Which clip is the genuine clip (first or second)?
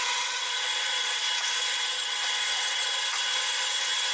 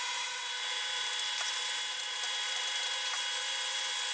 second